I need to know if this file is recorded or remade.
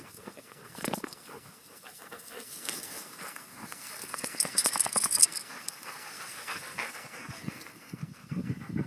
remade